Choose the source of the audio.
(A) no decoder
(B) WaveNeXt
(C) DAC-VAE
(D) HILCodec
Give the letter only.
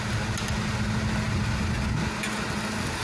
A